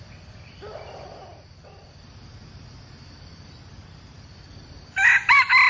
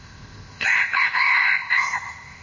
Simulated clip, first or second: second